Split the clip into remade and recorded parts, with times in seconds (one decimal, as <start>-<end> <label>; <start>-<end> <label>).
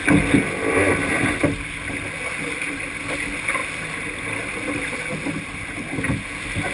0.0-6.7 recorded